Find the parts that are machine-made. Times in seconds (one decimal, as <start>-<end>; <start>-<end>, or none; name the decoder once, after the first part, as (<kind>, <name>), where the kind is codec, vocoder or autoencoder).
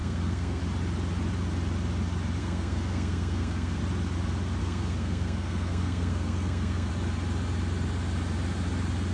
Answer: 0.0-0.6 (codec, SNAC); 2.4-3.8; 4.6-6.9